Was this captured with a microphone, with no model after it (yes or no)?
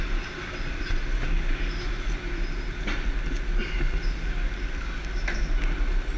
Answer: yes